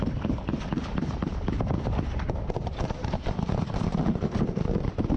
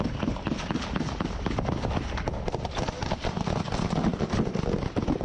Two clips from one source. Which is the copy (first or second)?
first